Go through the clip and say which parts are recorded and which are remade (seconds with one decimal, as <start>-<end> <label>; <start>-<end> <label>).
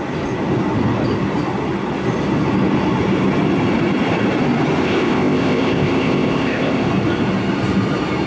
0.0-4.8 recorded; 4.8-6.9 remade; 6.9-8.3 recorded